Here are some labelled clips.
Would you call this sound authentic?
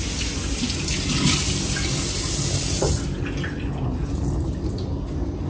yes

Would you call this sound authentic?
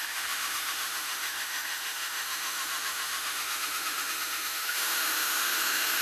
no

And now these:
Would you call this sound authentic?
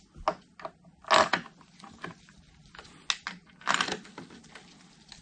yes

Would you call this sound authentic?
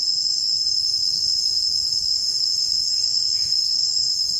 no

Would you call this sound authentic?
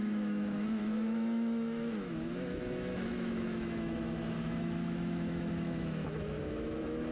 no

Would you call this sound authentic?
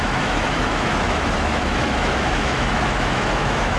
no